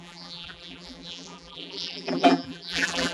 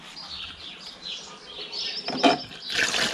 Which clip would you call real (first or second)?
second